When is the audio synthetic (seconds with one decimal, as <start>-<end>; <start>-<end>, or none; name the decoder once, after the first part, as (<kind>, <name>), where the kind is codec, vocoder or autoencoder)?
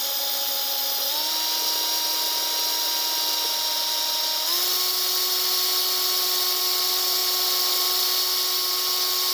none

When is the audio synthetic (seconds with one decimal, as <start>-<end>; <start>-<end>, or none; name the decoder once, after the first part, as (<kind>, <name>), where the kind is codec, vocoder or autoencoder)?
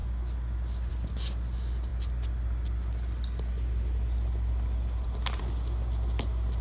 none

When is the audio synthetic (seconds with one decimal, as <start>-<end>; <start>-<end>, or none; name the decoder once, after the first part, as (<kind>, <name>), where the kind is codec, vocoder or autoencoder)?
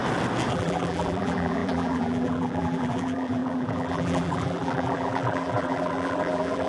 0.5-6.7 (vocoder, BigVGAN v2)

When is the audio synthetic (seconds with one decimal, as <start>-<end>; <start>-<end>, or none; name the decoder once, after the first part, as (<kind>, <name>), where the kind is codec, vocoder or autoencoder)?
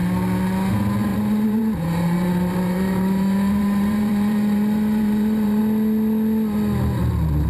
1.1-5.6 (vocoder, BigVGAN v2)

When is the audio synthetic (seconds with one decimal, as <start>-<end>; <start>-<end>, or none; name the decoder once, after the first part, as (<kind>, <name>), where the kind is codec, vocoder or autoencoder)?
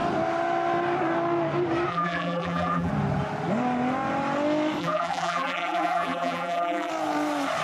1.9-2.9 (vocoder, BigVGAN v2); 4.8-6.9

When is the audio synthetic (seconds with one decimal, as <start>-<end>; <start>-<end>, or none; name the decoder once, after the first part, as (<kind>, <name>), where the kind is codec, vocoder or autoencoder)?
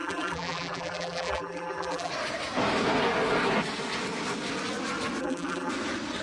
0.0-2.1 (vocoder, BigVGAN v2); 5.2-5.7